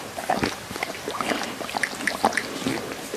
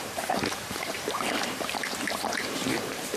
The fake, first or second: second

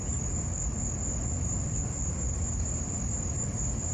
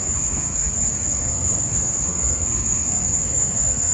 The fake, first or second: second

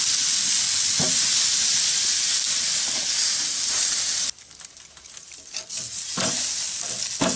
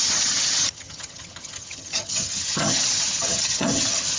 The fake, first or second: second